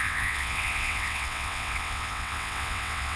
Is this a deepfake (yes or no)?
yes